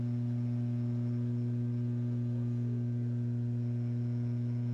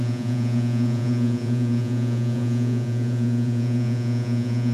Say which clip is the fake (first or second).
second